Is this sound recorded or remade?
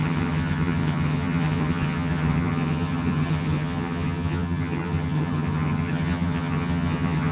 remade